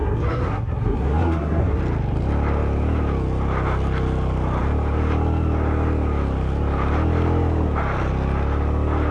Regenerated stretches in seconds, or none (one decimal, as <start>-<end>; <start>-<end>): 0.0-1.8